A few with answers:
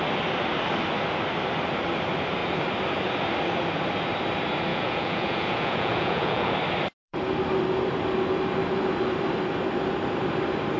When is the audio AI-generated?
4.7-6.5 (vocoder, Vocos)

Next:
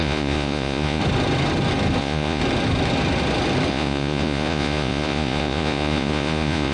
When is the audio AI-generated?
0.0-1.0 (vocoder, Vocos); 2.0-2.4; 3.7-6.7

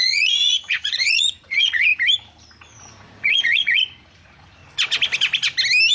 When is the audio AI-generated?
0.0-1.9 (vocoder, Vocos); 2.8-4.6

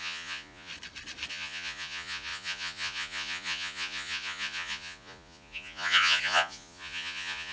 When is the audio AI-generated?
0.0-0.7 (vocoder, Vocos); 1.3-7.5